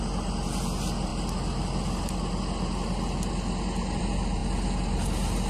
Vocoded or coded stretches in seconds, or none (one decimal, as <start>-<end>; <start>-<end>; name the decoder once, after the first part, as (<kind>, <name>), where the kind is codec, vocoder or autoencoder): none